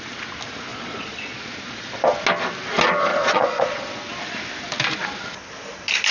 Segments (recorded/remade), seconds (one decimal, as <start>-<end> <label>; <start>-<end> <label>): 0.0-0.7 recorded; 0.7-1.4 remade; 1.4-3.1 recorded; 3.1-4.0 remade; 4.0-6.1 recorded